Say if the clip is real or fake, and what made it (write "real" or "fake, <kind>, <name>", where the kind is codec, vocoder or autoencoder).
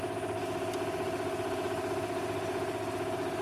real